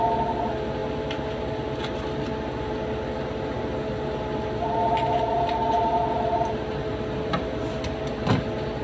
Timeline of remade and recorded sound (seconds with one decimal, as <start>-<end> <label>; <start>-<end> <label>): 0.0-8.8 recorded